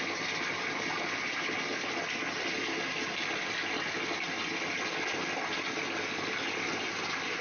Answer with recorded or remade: recorded